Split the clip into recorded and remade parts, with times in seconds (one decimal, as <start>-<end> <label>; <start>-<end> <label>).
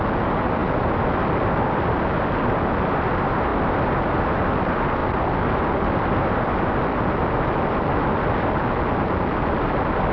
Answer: 0.0-10.1 recorded